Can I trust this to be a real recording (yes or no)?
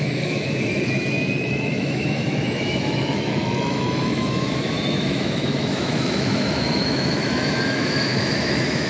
no